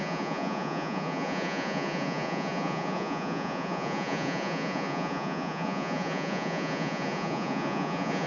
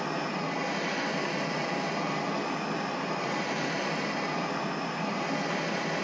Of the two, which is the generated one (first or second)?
first